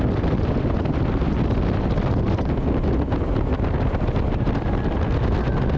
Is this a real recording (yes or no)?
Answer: yes